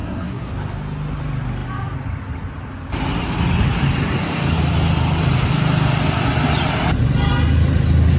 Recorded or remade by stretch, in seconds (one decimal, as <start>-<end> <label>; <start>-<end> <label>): 0.0-0.5 remade; 0.5-8.2 recorded